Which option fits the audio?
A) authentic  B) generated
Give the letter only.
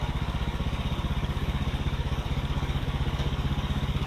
B